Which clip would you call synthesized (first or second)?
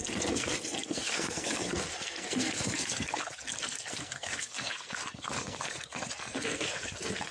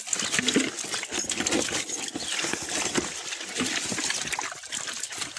first